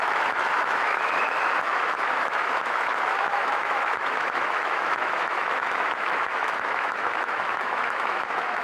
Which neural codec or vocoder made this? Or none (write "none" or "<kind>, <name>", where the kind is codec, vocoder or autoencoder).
autoencoder, DAC-VAE